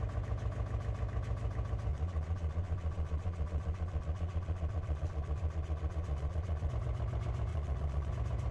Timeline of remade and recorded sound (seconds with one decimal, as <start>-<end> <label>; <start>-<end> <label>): 0.0-1.9 recorded; 1.9-6.7 remade; 6.7-7.5 recorded; 7.5-8.1 remade; 8.1-8.5 recorded

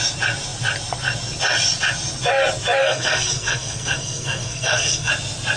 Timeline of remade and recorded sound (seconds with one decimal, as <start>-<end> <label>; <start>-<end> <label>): 0.0-2.8 recorded; 2.8-5.1 remade; 5.1-5.6 recorded

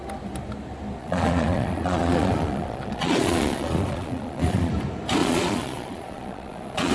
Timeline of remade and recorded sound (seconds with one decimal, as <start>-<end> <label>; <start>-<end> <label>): 0.0-1.0 recorded; 1.0-4.7 remade; 4.7-5.2 recorded; 5.2-6.9 remade